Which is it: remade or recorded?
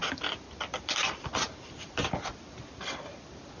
recorded